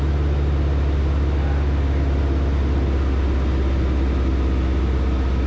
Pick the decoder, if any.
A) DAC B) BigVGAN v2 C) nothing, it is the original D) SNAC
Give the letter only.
C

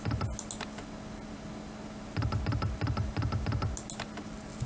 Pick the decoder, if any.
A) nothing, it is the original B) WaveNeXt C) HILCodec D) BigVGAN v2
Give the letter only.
A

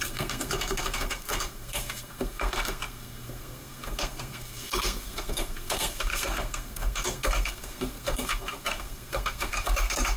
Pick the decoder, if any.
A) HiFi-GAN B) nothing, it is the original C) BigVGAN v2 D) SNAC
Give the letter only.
D